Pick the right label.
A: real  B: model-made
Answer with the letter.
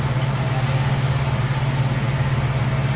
A